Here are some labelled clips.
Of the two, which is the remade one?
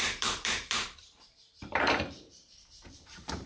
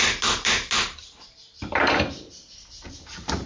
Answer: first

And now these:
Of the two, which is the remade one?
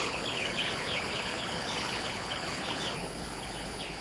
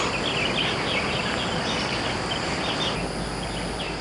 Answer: first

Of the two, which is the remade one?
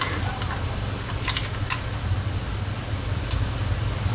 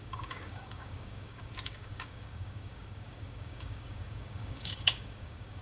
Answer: second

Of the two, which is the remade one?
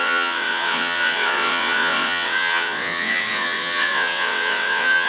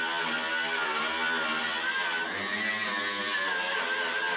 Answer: first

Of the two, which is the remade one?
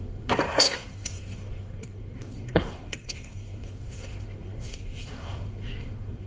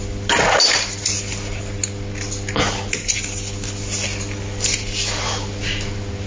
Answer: first